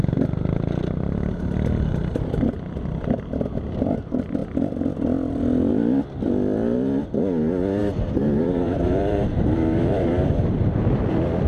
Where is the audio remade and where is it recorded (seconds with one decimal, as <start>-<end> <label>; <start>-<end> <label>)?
0.0-7.8 recorded; 7.8-11.0 remade; 11.0-11.5 recorded